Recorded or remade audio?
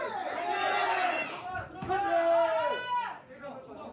recorded